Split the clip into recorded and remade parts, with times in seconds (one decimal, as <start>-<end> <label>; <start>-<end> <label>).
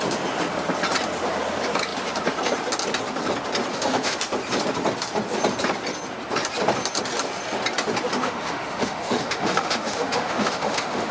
0.0-3.7 recorded; 3.7-4.2 remade; 4.2-8.2 recorded; 8.2-11.1 remade